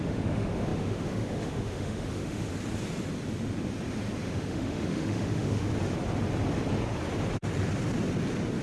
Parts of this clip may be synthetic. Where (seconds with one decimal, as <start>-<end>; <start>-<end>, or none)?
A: 0.0-2.5; 4.3-5.7